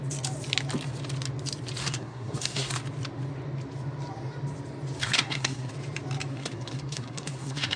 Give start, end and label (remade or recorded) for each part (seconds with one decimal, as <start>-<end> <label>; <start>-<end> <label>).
0.0-1.8 recorded; 1.8-2.7 remade; 2.7-5.0 recorded; 5.0-5.7 remade; 5.7-6.3 recorded; 6.3-7.8 remade